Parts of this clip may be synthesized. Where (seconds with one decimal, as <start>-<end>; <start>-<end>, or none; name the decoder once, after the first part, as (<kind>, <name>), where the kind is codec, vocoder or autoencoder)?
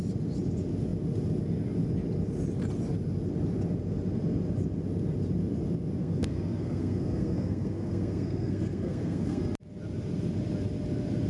6.0-9.4 (codec, SNAC)